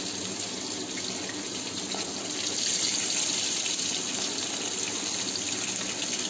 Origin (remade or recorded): recorded